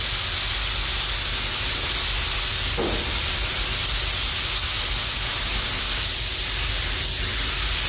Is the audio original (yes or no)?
yes